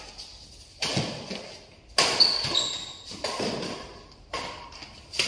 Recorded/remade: recorded